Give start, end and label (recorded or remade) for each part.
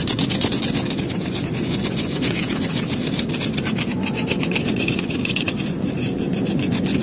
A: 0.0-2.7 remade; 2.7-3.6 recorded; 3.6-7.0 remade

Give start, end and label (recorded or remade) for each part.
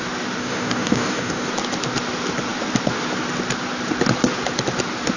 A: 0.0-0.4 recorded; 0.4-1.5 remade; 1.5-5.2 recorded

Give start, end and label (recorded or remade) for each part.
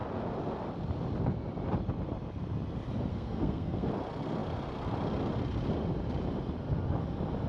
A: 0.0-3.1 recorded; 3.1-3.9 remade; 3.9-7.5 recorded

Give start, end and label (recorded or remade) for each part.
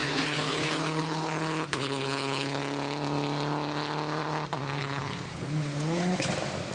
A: 0.0-2.6 remade; 2.6-4.8 recorded; 4.8-6.3 remade; 6.3-6.7 recorded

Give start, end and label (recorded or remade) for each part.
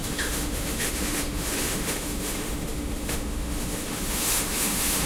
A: 0.0-5.1 remade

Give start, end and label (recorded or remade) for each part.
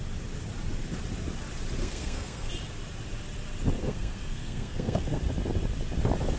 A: 0.0-1.8 recorded; 1.8-2.5 remade; 2.5-3.8 recorded; 3.8-5.2 remade; 5.2-6.4 recorded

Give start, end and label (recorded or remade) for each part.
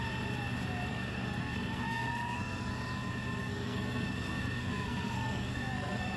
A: 0.0-0.9 recorded; 0.9-2.7 remade; 2.7-3.4 recorded; 3.4-6.2 remade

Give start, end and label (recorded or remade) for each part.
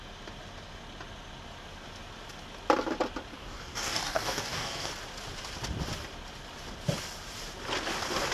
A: 0.0-3.3 recorded; 3.3-4.9 remade; 4.9-8.3 recorded